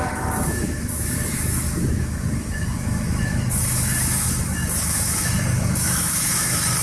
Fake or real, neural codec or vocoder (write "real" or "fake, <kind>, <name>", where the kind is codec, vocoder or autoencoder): fake, autoencoder, DAC-VAE